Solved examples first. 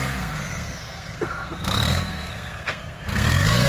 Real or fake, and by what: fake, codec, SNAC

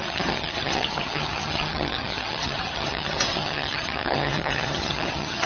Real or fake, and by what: fake, vocoder, HiFi-GAN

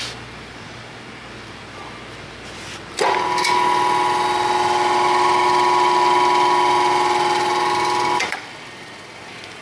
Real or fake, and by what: real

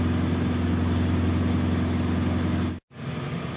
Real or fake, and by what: real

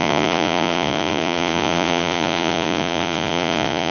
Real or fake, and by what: fake, vocoder, Vocos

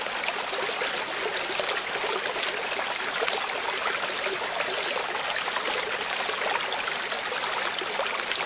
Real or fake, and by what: real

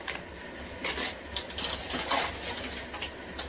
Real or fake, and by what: real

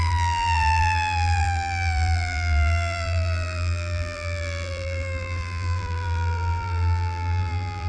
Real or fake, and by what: fake, vocoder, BigVGAN v2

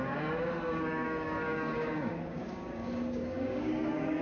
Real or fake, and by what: fake, codec, DAC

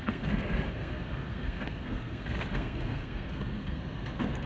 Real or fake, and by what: fake, codec, SNAC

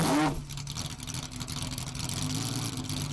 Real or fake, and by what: real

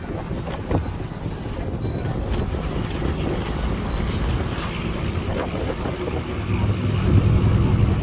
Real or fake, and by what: real